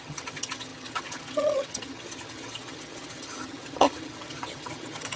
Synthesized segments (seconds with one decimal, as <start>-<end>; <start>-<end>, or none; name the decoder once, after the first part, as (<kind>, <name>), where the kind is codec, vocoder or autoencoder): 0.0-5.2 (vocoder, HiFi-GAN)